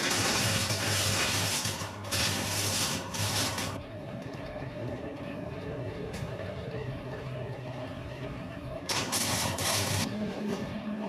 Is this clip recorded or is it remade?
remade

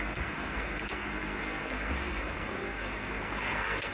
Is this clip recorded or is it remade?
remade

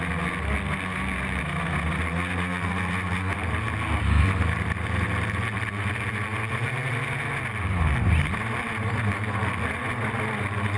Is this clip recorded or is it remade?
recorded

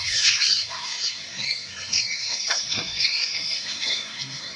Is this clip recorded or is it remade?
remade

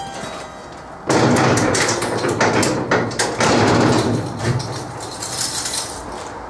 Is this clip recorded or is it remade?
recorded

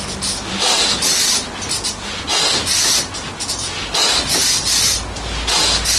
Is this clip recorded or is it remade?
recorded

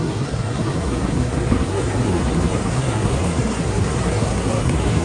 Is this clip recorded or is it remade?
remade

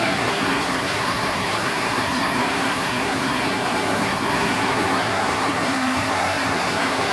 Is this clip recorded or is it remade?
remade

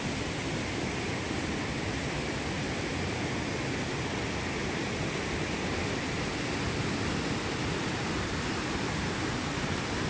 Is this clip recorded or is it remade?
recorded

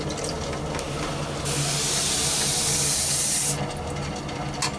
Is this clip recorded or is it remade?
recorded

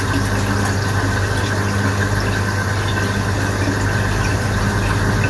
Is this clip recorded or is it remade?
recorded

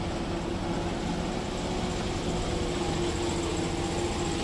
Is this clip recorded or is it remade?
recorded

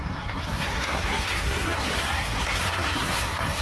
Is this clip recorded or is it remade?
remade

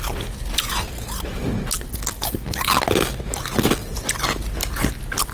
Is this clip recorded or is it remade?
recorded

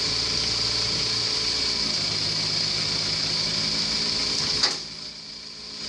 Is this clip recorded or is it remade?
recorded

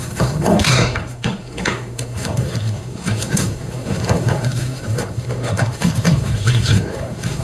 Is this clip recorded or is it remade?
remade